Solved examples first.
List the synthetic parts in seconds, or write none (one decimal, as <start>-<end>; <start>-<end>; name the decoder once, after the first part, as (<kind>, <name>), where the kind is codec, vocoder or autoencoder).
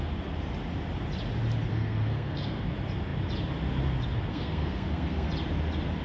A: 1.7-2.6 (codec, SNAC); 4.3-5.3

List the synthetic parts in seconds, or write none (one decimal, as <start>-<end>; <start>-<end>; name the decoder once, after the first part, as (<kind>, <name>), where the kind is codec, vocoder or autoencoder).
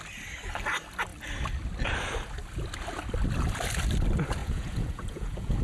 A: 4.4-5.6 (vocoder, Vocos)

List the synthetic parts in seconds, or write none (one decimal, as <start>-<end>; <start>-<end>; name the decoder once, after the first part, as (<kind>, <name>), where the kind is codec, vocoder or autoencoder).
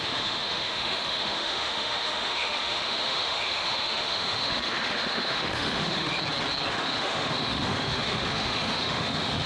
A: 0.0-6.1 (autoencoder, DAC-VAE); 6.7-9.5